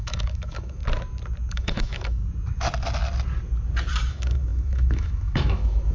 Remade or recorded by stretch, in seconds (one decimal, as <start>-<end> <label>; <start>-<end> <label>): 0.0-0.8 remade; 0.8-1.5 recorded; 1.5-2.2 remade; 2.2-4.1 recorded; 4.1-5.9 remade